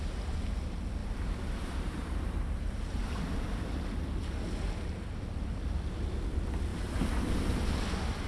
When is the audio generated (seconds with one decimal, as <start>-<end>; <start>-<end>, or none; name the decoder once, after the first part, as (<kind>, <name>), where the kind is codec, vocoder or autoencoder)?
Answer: 1.0-3.9 (vocoder, BigVGAN v2); 6.7-7.3